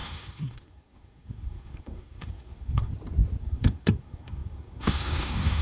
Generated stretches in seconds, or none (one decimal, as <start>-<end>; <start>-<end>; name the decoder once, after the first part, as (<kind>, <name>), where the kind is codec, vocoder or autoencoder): 0.0-2.9 (codec, SNAC); 3.4-5.6